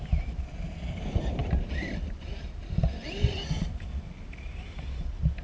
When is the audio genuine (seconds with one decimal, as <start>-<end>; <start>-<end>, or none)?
0.0-5.4